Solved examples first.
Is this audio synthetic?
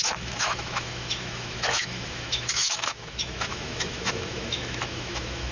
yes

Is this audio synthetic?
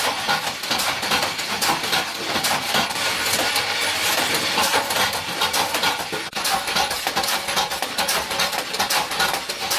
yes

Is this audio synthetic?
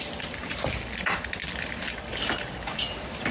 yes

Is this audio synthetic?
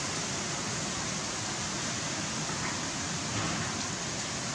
no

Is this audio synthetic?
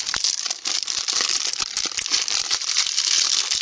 no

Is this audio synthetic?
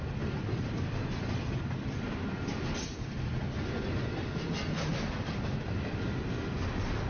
no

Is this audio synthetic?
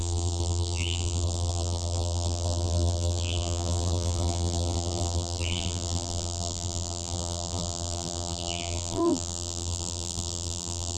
yes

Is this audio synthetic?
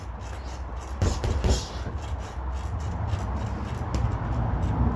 no